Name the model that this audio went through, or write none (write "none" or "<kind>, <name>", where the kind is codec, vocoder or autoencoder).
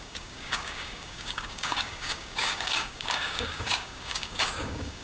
codec, DAC